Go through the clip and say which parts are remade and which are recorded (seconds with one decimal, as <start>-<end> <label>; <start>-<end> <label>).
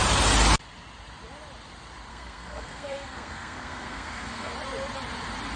0.0-2.1 recorded; 2.1-4.5 remade; 4.5-5.6 recorded